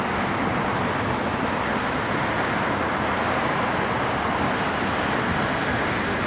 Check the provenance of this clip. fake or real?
real